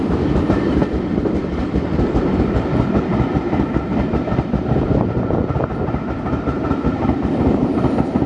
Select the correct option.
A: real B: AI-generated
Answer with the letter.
B